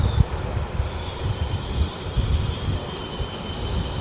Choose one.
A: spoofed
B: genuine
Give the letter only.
A